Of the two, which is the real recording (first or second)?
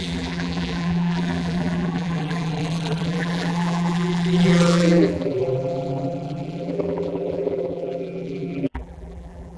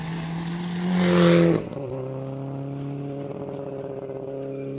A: second